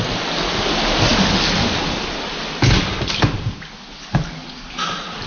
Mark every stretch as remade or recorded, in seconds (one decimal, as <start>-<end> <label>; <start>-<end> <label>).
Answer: 0.0-5.3 recorded